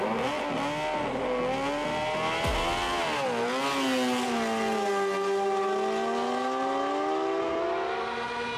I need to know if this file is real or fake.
real